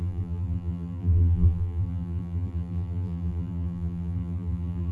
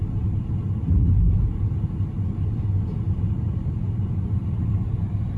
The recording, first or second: second